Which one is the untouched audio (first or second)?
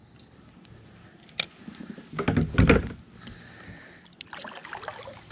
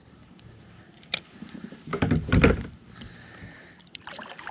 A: first